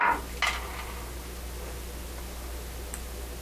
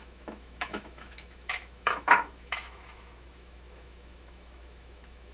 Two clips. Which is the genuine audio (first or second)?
first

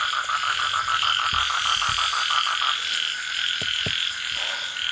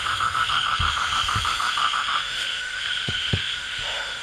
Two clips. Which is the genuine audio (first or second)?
first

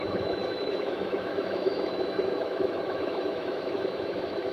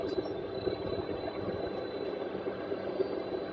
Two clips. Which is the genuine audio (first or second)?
second